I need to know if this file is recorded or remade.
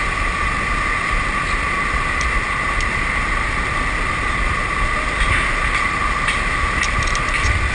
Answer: recorded